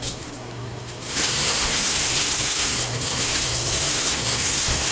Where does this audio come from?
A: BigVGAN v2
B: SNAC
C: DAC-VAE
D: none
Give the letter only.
B